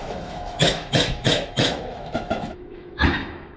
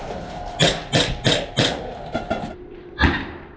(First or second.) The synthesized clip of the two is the first